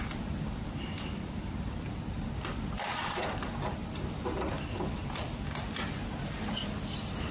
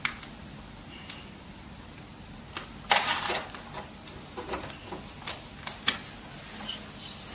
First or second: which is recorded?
second